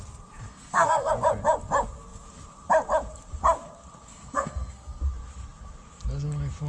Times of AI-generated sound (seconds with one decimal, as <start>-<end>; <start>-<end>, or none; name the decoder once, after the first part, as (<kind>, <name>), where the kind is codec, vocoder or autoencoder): 0.5-1.1 (codec, SNAC); 4.1-5.0